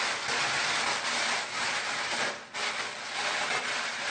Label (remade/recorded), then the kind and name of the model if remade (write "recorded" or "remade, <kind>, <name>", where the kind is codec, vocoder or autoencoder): recorded